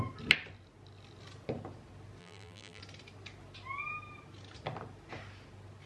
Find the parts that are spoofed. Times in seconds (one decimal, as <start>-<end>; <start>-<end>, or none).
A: 2.2-2.8